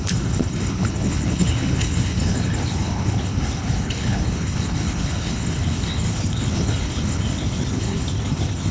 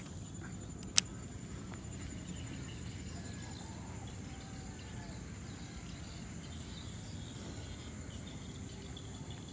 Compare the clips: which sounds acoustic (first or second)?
second